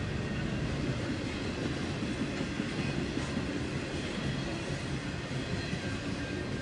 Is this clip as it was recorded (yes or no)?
yes